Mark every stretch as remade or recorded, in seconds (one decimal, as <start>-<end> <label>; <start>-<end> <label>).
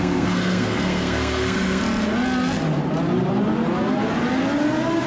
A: 0.0-1.8 remade; 1.8-5.1 recorded